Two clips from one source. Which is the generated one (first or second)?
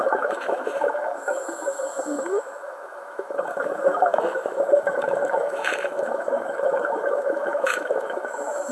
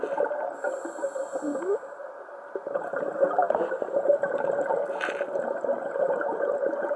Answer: first